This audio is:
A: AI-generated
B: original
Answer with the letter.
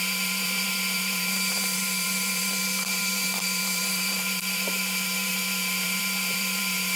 A